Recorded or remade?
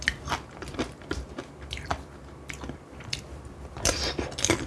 remade